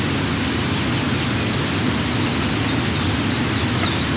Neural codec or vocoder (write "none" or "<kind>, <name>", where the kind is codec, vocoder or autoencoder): none